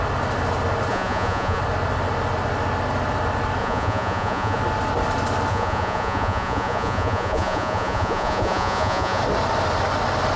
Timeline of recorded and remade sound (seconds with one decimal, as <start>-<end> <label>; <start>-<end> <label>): 0.0-0.9 recorded; 0.9-1.6 remade; 1.6-3.6 recorded; 3.6-4.6 remade; 4.6-5.5 recorded; 5.5-9.2 remade; 9.2-10.4 recorded